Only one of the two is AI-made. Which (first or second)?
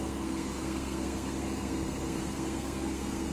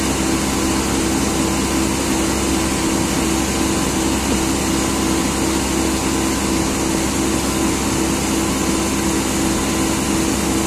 first